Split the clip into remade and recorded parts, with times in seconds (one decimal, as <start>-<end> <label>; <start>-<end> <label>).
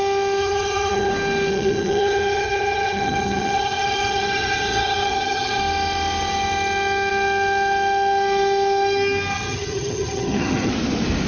0.0-0.4 recorded; 0.4-1.1 remade; 1.1-1.5 recorded; 1.5-5.6 remade; 5.6-9.3 recorded; 9.3-10.7 remade; 10.7-11.3 recorded